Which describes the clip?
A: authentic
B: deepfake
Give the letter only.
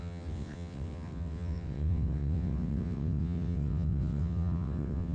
B